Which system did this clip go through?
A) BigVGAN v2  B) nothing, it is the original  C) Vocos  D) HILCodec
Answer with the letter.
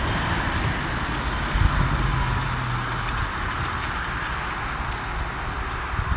B